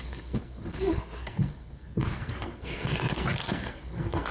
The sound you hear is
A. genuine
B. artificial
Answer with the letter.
B